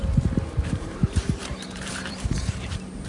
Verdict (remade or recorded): remade